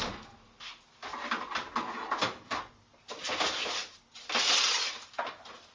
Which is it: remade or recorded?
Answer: recorded